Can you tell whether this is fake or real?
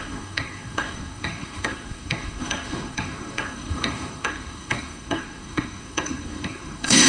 fake